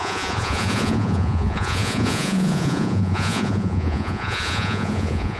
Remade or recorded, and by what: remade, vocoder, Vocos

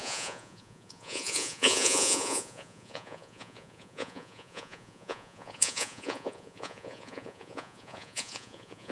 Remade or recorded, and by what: remade, vocoder, Vocos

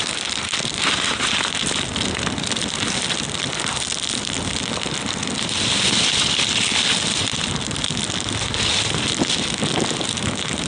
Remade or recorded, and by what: recorded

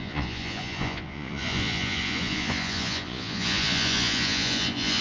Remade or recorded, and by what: remade, vocoder, Vocos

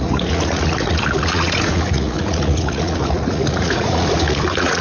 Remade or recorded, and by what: remade, vocoder, Vocos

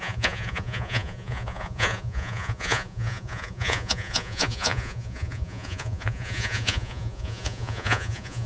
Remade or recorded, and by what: remade, vocoder, Vocos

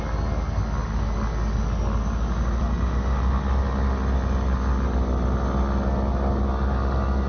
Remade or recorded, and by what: recorded